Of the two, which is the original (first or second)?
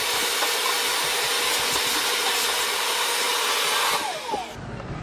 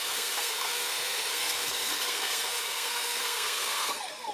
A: first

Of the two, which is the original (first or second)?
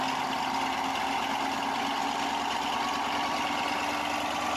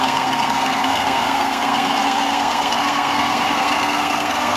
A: first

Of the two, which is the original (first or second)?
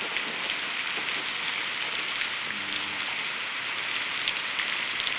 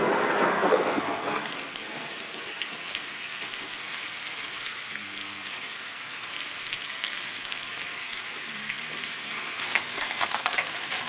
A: first